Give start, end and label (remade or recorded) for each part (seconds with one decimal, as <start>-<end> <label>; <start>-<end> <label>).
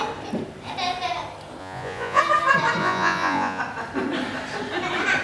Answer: 0.0-1.6 recorded; 1.6-2.2 remade; 2.2-2.8 recorded; 2.8-3.6 remade; 3.6-5.2 recorded